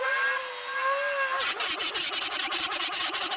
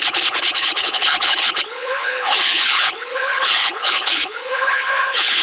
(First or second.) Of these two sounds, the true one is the first